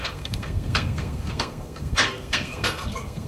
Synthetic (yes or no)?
yes